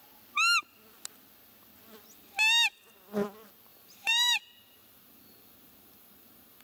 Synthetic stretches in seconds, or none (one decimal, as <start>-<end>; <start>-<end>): 3.7-6.6